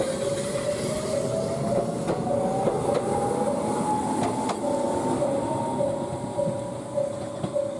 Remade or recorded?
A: recorded